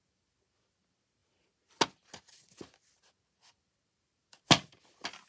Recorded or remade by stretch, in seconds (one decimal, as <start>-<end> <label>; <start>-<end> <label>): 0.0-5.3 recorded